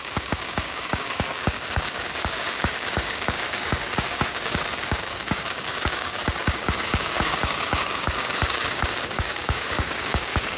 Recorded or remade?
remade